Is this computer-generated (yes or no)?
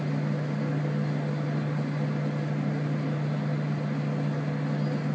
no